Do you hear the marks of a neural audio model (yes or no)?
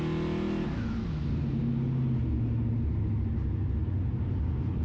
no